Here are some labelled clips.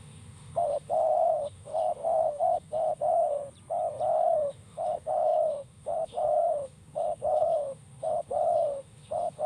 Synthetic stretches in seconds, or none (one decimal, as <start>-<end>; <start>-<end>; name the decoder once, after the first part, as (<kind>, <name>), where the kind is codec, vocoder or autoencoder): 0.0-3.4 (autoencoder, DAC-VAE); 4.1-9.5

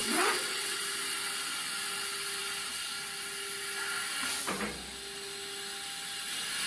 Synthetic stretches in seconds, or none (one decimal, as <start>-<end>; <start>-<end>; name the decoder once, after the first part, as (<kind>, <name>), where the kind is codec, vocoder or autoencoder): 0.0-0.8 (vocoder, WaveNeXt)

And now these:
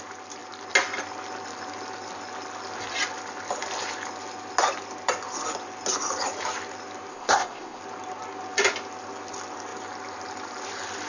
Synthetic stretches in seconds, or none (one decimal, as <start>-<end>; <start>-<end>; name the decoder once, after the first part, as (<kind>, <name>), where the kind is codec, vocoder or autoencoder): 7.1-7.8 (codec, ZipCodec)